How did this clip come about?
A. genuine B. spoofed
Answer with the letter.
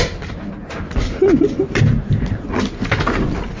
A